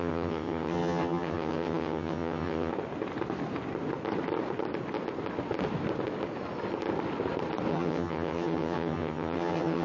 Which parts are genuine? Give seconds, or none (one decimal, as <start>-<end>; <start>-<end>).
2.7-7.7